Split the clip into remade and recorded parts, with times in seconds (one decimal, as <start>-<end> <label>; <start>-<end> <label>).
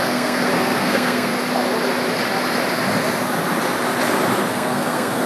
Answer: 0.0-1.3 remade; 1.3-4.5 recorded; 4.5-5.3 remade